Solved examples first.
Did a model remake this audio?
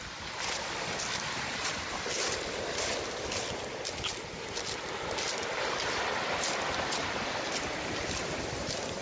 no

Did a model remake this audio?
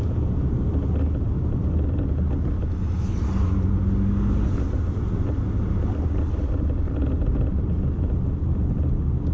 no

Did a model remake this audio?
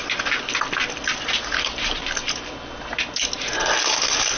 no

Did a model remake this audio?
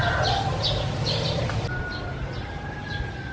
no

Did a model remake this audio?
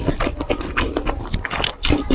no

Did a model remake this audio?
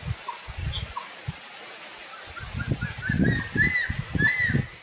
no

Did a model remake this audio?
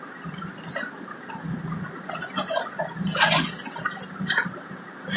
no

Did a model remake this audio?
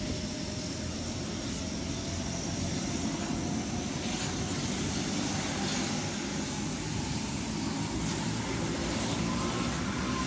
no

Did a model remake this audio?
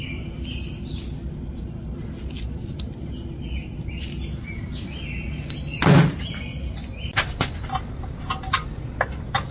no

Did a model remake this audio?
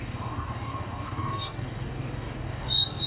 yes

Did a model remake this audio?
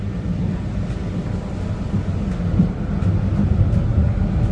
no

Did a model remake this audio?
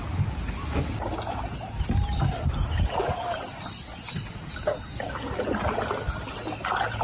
no